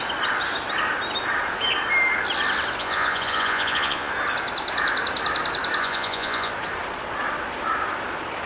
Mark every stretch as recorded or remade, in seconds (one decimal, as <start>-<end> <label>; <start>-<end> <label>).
0.0-2.8 recorded; 2.8-4.1 remade; 4.1-5.8 recorded; 5.8-6.5 remade; 6.5-8.5 recorded